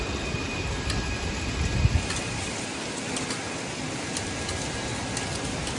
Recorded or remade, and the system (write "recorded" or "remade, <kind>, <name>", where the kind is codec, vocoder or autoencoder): recorded